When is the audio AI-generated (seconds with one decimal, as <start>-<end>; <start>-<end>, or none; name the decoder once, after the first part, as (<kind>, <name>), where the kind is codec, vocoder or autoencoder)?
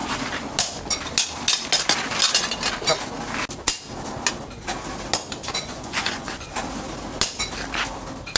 5.4-6.5 (vocoder, Vocos)